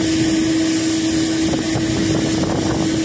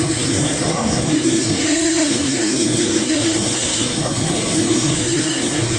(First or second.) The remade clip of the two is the second